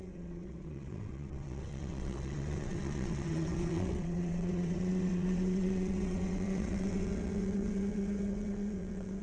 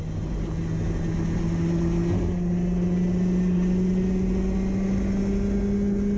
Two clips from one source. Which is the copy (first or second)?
first